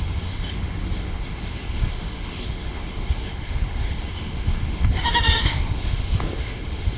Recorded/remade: remade